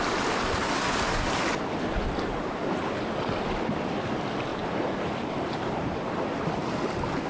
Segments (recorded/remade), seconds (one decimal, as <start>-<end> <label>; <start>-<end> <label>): 0.0-4.5 recorded; 4.5-6.2 remade; 6.2-7.3 recorded